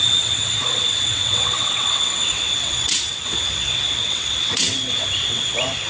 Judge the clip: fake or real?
fake